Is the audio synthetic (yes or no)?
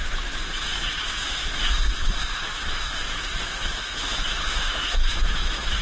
yes